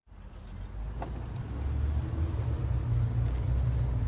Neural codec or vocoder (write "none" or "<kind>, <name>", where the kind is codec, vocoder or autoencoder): none